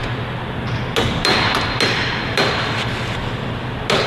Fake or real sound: real